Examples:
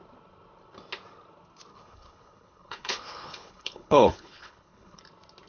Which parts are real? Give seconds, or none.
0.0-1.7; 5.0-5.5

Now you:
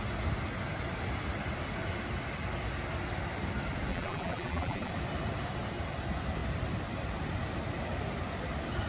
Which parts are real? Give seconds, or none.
0.0-3.9; 4.9-8.9

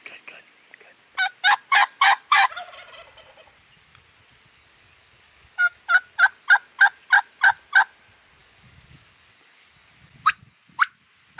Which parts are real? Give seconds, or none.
0.0-1.7; 2.5-4.5; 5.8-8.4; 10.6-11.4

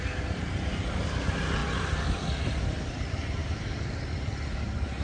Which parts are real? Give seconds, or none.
0.0-5.0

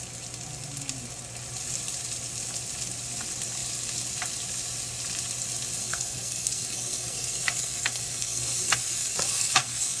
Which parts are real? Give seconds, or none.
0.0-5.8

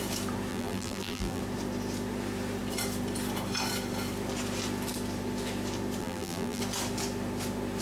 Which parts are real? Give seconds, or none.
0.0-0.5; 1.4-6.0; 6.6-7.8

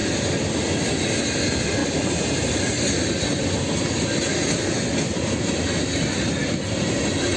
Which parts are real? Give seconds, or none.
0.0-7.4

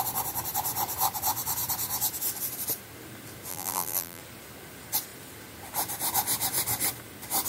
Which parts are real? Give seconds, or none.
0.0-3.5; 4.2-7.5